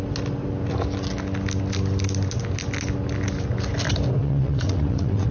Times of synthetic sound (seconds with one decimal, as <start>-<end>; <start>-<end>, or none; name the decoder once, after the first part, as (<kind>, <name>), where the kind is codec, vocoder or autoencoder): 4.2-5.3 (vocoder, WaveNeXt)